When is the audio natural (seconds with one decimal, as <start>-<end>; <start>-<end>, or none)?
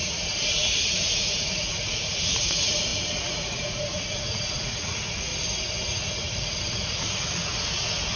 5.3-5.9